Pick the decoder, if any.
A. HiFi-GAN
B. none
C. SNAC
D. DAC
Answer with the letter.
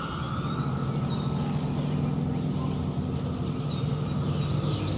B